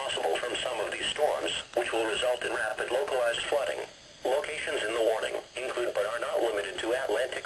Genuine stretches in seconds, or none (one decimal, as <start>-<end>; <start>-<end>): 0.0-7.5